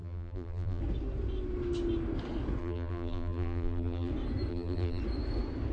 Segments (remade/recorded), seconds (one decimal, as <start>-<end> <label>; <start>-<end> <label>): 0.0-0.8 remade; 0.8-2.6 recorded; 2.6-4.1 remade; 4.1-4.5 recorded; 4.5-5.0 remade; 5.0-5.7 recorded